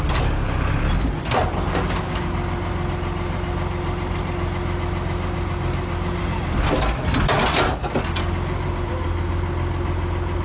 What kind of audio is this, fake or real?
real